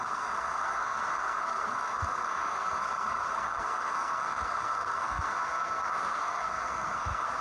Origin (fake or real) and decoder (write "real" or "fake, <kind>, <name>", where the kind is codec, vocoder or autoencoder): fake, codec, SNAC